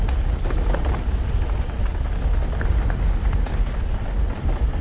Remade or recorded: recorded